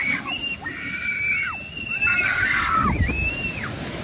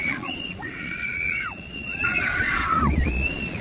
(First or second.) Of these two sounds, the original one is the first